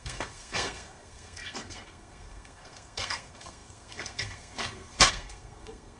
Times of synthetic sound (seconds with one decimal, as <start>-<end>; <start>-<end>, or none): 0.0-6.0